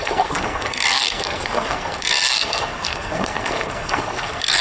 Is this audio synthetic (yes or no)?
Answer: yes